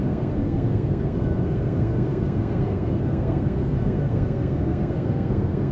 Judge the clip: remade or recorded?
remade